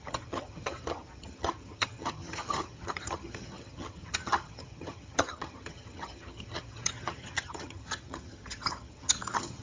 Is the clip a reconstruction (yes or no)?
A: yes